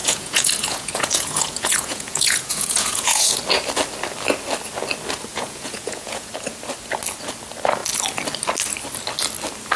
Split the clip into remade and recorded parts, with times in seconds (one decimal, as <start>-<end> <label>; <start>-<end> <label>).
0.0-3.4 remade; 3.4-5.3 recorded; 5.3-6.3 remade; 6.3-9.8 recorded